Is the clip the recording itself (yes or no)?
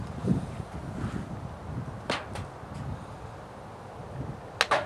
yes